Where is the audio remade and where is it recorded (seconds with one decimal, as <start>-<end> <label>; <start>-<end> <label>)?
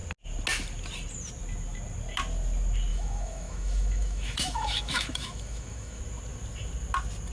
0.0-2.9 recorded; 2.9-6.0 remade; 6.0-7.3 recorded